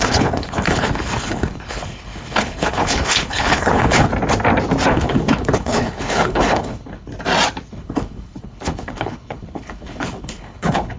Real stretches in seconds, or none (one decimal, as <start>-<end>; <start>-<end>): 4.1-4.9; 7.1-7.7